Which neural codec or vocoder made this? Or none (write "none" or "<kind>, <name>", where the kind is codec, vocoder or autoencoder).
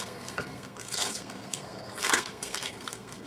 codec, SNAC